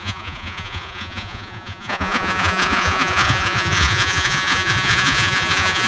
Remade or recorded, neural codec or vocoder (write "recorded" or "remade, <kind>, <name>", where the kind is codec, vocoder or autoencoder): remade, vocoder, Vocos